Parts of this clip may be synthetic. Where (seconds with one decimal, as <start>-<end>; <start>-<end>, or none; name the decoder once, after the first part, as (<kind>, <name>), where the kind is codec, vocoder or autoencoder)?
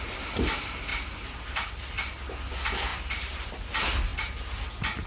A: 0.9-1.4 (vocoder, BigVGAN v2); 2.9-3.6